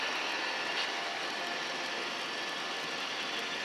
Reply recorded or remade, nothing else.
recorded